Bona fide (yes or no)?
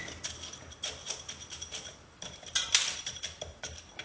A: yes